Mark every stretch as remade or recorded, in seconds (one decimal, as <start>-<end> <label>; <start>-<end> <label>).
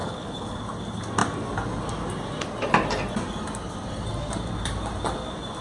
0.0-0.6 remade; 0.6-5.6 recorded